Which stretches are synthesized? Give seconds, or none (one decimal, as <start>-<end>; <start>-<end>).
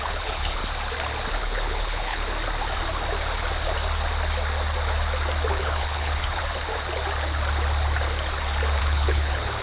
0.0-0.6; 1.3-2.2; 5.5-6.4; 8.8-9.6